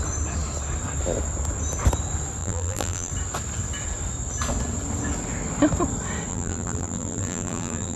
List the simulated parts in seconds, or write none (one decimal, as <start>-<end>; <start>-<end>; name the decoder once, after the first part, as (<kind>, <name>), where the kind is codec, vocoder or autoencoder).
2.4-3.1 (vocoder, BigVGAN v2); 6.3-8.0